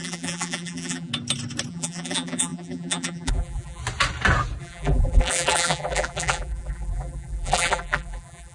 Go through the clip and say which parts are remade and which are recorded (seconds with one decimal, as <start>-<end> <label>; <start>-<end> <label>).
0.0-1.1 remade; 1.1-1.7 recorded; 1.7-3.8 remade; 3.8-4.6 recorded; 4.6-8.5 remade